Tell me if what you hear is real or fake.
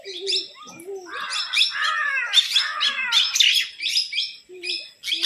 real